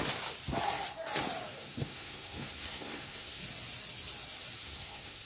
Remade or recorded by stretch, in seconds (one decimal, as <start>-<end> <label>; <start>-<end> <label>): 0.0-1.5 recorded; 1.5-3.4 remade; 3.4-4.6 recorded; 4.6-5.3 remade